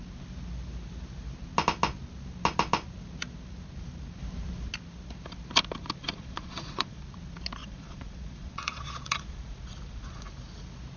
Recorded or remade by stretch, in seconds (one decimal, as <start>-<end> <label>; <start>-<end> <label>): 0.0-6.0 recorded; 6.0-7.0 remade; 7.0-7.6 recorded; 7.6-10.3 remade; 10.3-11.0 recorded